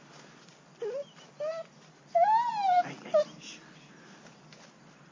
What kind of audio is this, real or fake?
real